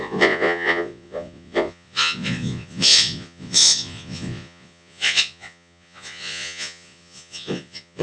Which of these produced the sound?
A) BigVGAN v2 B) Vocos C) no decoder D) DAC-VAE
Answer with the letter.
B